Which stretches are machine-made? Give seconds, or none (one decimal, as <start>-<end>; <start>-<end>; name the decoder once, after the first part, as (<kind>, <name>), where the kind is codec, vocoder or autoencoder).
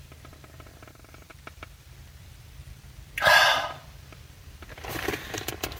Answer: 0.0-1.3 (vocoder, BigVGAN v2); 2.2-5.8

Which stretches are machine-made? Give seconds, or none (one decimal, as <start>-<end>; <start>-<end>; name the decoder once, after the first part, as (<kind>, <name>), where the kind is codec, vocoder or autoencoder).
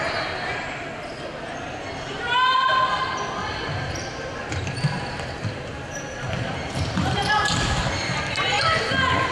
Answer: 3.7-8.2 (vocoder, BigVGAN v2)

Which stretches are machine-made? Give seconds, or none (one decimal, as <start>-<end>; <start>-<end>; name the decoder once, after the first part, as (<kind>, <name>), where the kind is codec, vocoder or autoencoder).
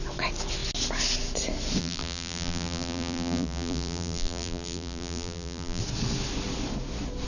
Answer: 1.8-5.8 (vocoder, BigVGAN v2)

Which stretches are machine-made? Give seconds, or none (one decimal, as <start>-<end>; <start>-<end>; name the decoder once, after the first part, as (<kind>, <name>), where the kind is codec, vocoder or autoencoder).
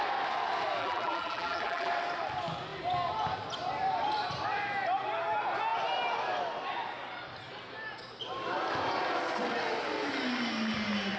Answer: 0.8-1.9 (vocoder, BigVGAN v2)